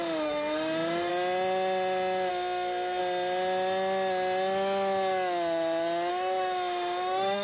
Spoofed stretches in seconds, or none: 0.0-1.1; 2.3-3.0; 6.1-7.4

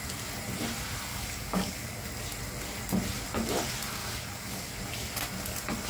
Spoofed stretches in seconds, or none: 1.1-2.1; 4.0-4.7